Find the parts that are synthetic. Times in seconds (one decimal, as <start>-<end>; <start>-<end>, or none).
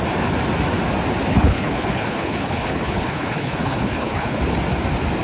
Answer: 1.3-4.4